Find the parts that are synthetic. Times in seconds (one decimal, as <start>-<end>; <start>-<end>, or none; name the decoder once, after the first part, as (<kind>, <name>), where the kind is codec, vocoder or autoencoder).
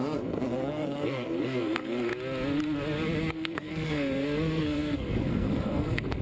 0.0-2.1 (codec, SNAC); 3.3-6.2